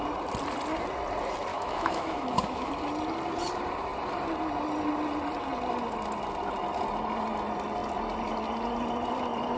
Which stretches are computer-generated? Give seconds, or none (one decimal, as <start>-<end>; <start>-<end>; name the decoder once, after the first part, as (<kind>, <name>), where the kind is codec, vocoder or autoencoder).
1.5-2.7 (autoencoder, DAC-VAE)

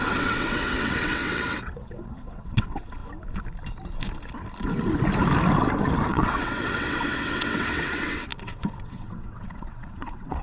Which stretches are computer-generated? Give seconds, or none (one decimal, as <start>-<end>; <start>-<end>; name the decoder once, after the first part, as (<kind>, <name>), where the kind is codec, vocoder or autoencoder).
0.0-3.0 (vocoder, WaveNeXt); 6.1-10.4

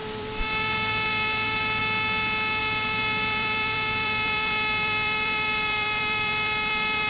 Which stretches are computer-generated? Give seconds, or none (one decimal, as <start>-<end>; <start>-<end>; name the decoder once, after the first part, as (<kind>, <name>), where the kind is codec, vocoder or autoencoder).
0.0-1.8 (vocoder, BigVGAN v2); 2.6-7.1

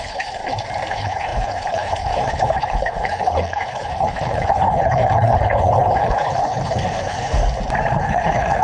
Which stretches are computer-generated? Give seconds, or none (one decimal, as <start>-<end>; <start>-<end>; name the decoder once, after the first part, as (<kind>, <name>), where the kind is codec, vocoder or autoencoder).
0.0-0.4 (codec, HILCodec); 0.9-7.4; 7.9-8.6

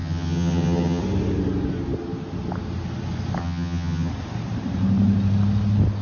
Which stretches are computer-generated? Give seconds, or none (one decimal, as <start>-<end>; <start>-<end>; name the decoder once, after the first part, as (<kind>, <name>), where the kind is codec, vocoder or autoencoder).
0.0-1.0 (vocoder, HiFi-GAN); 3.4-4.1

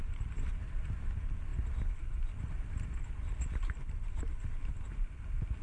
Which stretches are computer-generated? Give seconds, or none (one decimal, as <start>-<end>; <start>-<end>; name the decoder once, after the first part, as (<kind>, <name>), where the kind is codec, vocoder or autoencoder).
none

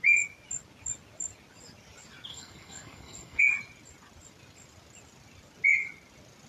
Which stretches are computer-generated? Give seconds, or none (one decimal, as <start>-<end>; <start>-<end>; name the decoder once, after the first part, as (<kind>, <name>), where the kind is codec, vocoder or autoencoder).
2.3-3.4 (codec, SNAC)

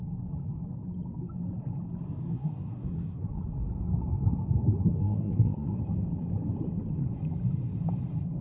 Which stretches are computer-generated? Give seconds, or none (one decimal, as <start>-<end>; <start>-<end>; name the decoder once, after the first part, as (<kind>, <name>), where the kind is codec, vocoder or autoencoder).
2.3-3.4 (codec, SNAC); 5.0-5.8